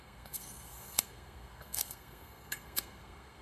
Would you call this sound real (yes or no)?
no